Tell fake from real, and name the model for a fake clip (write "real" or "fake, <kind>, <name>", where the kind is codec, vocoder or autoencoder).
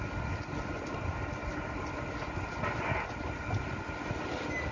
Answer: real